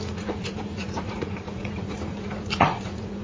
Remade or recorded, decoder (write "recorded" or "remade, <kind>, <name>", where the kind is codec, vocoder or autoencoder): remade, vocoder, Vocos